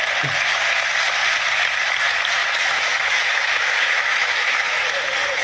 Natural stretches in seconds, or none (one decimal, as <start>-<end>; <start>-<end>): 0.0-2.4; 4.8-5.4